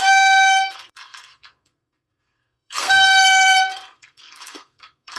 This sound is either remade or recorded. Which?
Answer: remade